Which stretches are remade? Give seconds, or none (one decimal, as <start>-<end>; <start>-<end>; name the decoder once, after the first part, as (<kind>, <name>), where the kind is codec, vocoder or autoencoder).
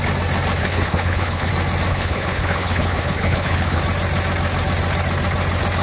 0.6-1.5 (codec, HILCodec); 1.9-3.8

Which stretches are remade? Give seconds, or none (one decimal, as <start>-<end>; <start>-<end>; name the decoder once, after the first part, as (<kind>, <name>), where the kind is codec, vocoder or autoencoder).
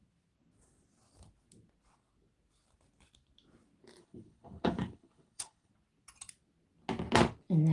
4.0-5.7 (codec, HILCodec)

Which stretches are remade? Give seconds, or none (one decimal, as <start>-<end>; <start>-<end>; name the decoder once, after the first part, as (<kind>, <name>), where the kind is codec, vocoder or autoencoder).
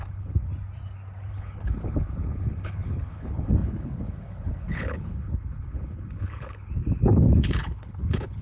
0.0-0.5 (codec, HILCodec); 1.3-8.4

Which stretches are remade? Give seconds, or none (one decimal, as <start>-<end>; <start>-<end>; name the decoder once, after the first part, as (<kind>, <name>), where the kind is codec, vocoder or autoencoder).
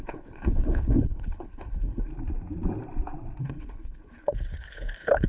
0.0-2.1 (codec, HILCodec); 3.4-5.3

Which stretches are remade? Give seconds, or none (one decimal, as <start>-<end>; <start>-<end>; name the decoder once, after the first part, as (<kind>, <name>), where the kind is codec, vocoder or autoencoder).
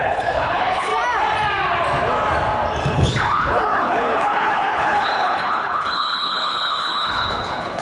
0.0-0.9 (codec, HILCodec); 2.9-7.8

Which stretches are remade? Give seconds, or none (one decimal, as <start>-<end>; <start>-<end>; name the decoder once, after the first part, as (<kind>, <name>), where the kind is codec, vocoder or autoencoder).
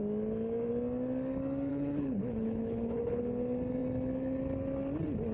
1.7-3.2 (codec, HILCodec)